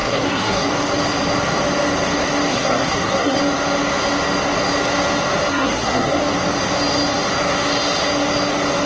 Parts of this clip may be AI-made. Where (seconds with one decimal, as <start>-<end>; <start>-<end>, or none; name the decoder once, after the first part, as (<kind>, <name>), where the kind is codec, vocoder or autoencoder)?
0.0-0.7 (codec, SNAC); 2.5-3.4; 5.5-6.2